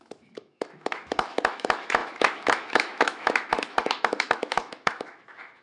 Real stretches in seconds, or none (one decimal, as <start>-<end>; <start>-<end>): none